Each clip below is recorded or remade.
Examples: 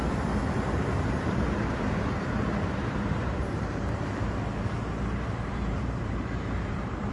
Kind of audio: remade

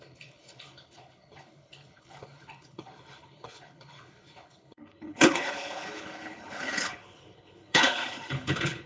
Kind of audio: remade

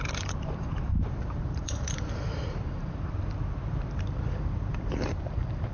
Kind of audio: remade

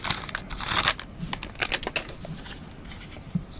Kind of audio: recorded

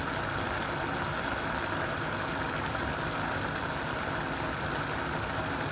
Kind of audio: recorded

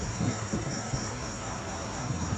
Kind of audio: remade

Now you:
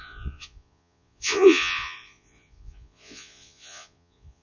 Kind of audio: remade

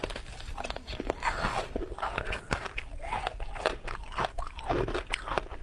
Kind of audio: recorded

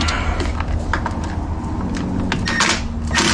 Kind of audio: recorded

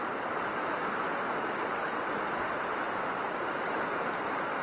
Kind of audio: recorded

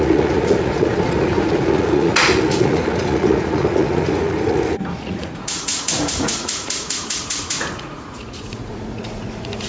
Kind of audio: remade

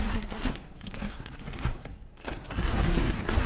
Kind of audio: remade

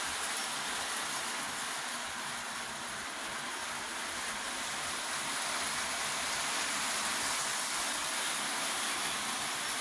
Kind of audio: recorded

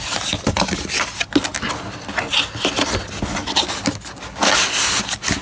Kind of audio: recorded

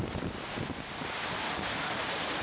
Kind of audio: recorded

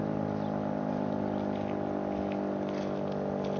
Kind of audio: recorded